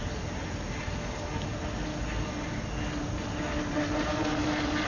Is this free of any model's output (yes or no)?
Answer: yes